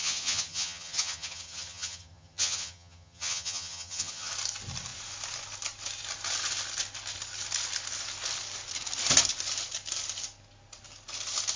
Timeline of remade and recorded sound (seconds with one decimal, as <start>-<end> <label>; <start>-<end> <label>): 0.0-4.3 remade; 4.3-11.6 recorded